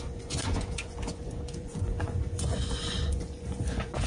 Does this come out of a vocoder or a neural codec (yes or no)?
yes